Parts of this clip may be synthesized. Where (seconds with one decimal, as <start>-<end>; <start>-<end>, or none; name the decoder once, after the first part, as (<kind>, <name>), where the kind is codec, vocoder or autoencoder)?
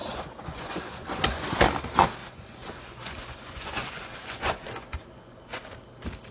0.0-1.4 (vocoder, Vocos); 2.2-5.7